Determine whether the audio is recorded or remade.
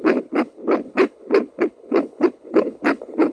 remade